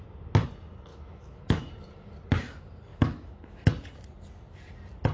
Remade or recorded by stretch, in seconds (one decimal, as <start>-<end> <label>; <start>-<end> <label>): 0.0-0.9 recorded; 0.9-1.7 remade; 1.7-2.9 recorded; 2.9-3.6 remade; 3.6-5.1 recorded